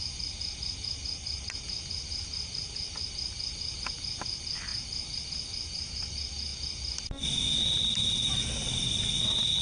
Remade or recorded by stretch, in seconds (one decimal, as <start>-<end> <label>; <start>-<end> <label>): 0.0-9.6 recorded